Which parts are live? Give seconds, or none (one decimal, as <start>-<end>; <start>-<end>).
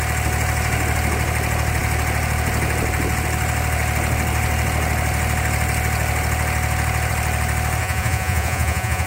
0.0-7.8